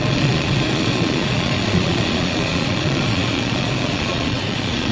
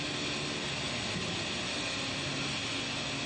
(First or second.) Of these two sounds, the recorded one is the second